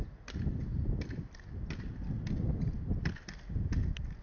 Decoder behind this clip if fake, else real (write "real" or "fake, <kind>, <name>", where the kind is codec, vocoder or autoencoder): real